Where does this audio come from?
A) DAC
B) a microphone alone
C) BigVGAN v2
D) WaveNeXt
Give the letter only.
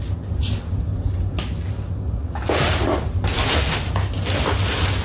B